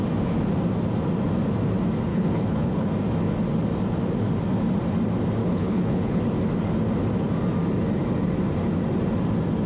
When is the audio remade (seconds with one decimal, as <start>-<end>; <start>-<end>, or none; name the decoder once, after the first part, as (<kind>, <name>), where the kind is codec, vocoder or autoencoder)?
2.1-2.9 (codec, HILCodec); 5.4-6.2